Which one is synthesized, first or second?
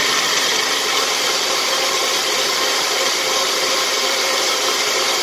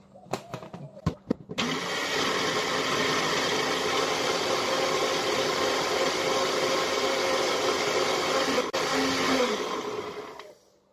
first